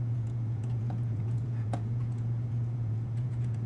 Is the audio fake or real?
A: fake